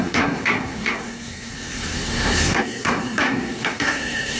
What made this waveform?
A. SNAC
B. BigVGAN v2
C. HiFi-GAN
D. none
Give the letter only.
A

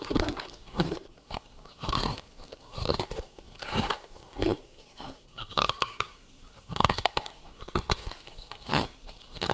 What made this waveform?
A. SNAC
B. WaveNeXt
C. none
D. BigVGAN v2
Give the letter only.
A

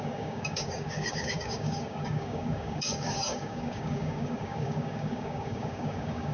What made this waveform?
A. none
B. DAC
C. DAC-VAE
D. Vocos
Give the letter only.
B